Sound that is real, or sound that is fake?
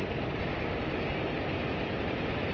real